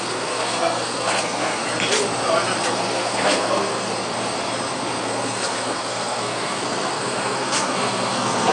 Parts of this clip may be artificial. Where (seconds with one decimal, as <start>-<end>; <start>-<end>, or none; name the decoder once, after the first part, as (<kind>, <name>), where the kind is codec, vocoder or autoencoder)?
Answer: 0.0-1.6 (codec, SNAC); 2.7-3.9; 5.0-8.5